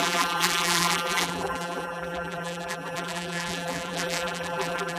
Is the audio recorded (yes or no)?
no